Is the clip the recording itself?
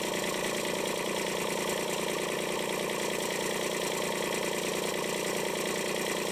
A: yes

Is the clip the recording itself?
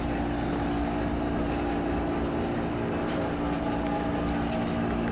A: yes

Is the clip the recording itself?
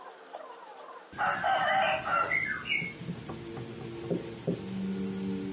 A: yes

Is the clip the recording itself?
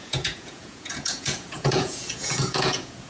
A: no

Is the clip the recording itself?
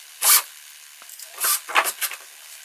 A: yes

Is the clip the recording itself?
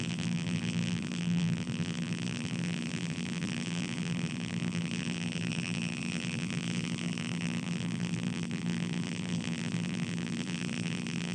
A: no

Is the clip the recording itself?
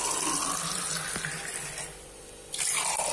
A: yes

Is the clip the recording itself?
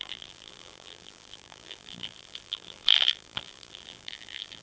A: no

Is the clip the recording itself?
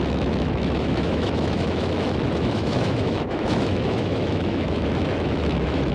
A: no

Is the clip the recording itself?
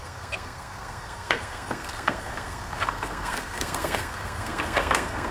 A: no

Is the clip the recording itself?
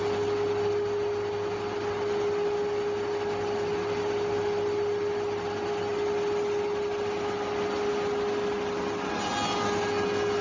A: yes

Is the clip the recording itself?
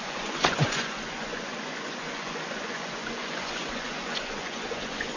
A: no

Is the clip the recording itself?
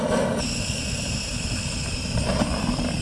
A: yes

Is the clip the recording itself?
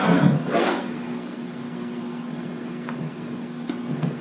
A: no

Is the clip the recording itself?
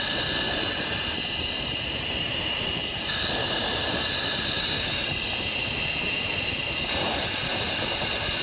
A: no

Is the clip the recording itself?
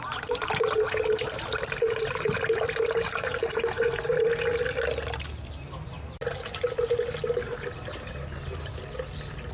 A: yes